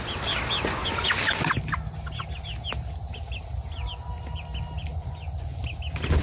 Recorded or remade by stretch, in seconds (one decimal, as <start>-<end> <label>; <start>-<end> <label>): 0.0-4.9 recorded; 4.9-5.6 remade; 5.6-6.2 recorded